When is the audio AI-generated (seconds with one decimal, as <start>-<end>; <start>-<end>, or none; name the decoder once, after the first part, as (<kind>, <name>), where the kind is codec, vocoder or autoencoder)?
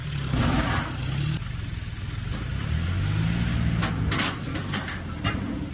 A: 4.5-5.0 (codec, DAC)